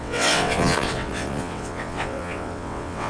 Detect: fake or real fake